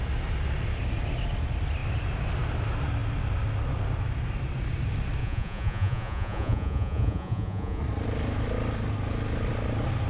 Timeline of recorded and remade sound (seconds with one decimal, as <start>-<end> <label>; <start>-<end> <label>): 0.0-5.2 recorded; 5.2-7.8 remade; 7.8-10.1 recorded